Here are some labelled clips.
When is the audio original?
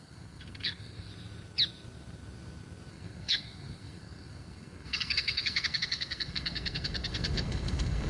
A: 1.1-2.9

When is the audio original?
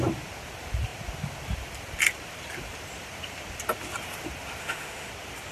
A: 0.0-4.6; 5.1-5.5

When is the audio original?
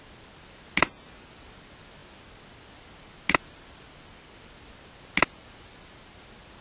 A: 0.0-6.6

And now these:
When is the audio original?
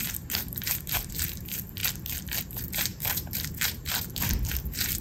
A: 1.8-2.4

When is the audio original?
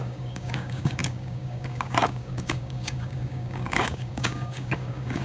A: none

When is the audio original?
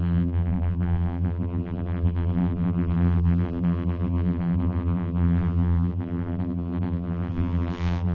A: none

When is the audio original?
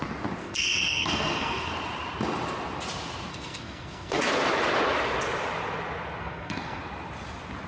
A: 0.0-0.4; 1.7-3.3; 4.2-6.2; 6.8-7.7